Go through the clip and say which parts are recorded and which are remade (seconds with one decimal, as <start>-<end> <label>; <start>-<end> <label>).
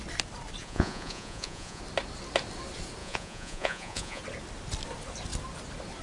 0.0-0.6 recorded; 0.6-1.8 remade; 1.8-3.0 recorded; 3.0-4.2 remade; 4.2-6.0 recorded